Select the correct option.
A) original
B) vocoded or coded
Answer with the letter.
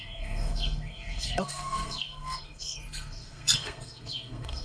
B